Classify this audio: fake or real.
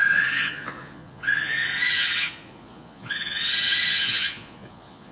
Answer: fake